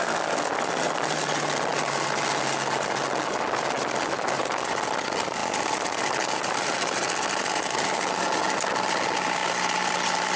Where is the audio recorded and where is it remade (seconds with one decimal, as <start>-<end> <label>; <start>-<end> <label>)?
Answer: 0.0-5.4 recorded; 5.4-8.2 remade; 8.2-10.4 recorded